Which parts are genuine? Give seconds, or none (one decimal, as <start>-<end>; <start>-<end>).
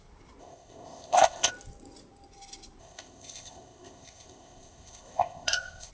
0.0-0.4; 1.5-2.8